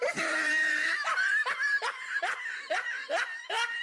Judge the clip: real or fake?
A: fake